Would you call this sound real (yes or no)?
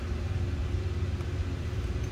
yes